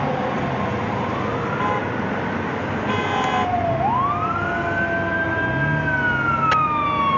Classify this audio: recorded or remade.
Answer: recorded